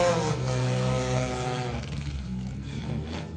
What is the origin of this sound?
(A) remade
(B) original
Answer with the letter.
A